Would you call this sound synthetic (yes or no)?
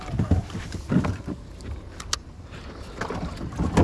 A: no